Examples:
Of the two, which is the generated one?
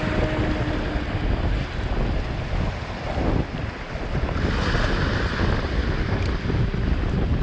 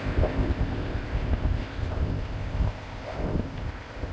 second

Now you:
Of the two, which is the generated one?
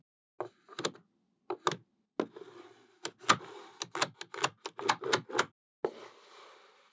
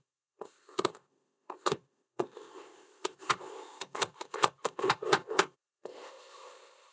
second